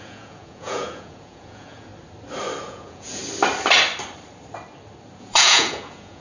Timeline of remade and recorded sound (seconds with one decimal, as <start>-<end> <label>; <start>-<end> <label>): 0.0-1.9 remade; 1.9-2.6 recorded; 2.6-3.2 remade; 3.2-5.2 recorded; 5.2-6.2 remade